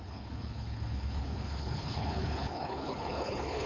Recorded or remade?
remade